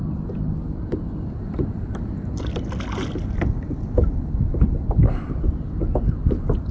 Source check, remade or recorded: recorded